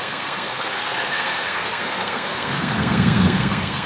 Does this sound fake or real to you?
fake